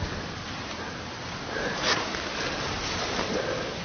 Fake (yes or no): no